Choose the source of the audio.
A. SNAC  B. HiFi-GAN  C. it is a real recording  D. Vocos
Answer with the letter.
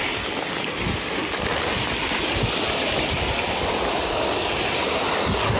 C